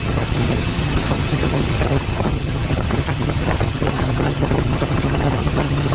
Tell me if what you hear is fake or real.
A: fake